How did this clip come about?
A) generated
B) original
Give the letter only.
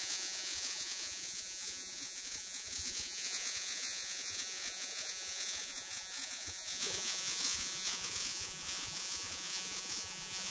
A